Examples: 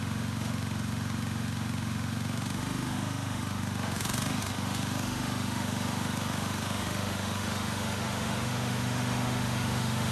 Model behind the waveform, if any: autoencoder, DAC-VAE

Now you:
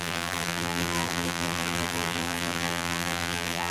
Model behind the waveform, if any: vocoder, BigVGAN v2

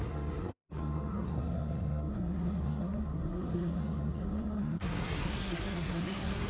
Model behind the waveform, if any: codec, SNAC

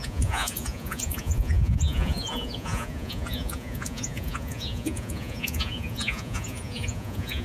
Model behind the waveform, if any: vocoder, Vocos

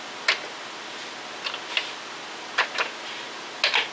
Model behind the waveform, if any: none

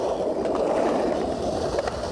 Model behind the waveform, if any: vocoder, BigVGAN v2